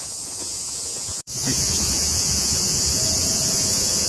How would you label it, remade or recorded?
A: remade